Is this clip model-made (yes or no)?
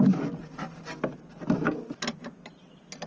no